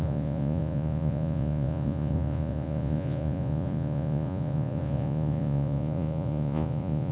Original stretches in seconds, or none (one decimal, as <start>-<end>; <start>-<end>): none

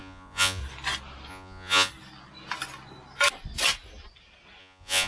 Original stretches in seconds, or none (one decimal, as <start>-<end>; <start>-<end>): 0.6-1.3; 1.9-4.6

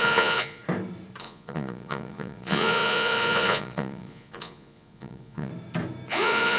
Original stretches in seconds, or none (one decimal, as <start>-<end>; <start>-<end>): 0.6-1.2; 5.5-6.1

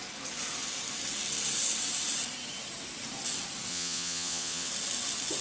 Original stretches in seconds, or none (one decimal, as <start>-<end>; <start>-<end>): 0.0-3.7; 4.7-5.4

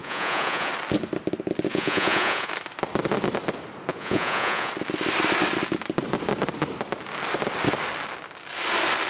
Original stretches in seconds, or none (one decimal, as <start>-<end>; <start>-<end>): 0.7-1.7; 2.5-3.9; 4.7-9.1